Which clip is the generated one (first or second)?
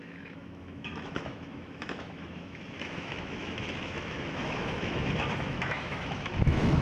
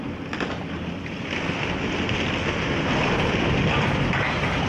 first